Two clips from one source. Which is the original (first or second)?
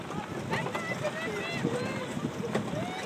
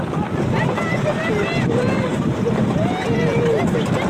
first